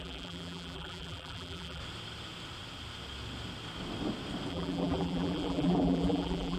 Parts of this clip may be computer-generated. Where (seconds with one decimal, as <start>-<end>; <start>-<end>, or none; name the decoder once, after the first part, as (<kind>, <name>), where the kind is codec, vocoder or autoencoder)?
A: 0.0-1.8 (vocoder, BigVGAN v2); 4.5-6.6